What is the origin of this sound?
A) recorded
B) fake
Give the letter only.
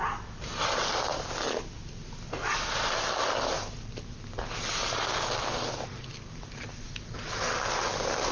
A